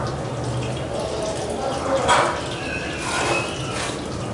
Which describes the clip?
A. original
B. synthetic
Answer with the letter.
A